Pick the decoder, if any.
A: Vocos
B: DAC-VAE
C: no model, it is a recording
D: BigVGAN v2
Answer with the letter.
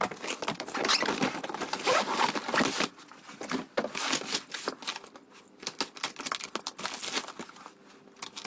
C